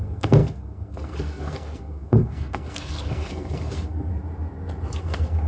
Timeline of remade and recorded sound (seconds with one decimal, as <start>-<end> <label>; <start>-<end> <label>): 0.0-4.1 remade; 4.1-5.0 recorded; 5.0-5.5 remade